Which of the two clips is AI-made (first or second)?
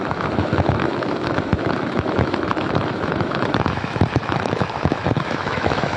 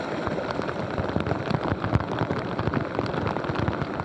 first